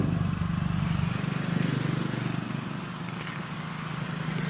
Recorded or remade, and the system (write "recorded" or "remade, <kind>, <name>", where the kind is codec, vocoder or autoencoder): recorded